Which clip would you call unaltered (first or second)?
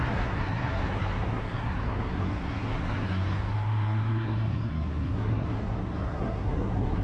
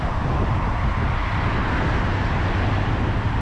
second